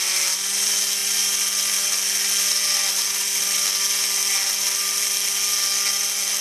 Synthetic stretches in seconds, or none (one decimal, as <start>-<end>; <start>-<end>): none